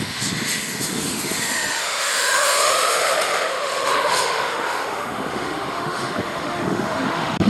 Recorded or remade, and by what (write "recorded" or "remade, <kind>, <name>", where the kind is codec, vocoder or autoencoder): remade, autoencoder, DAC-VAE